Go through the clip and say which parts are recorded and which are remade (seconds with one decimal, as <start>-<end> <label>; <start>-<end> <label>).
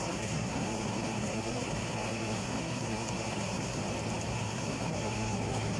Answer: 0.0-3.8 remade; 3.8-4.3 recorded; 4.3-5.8 remade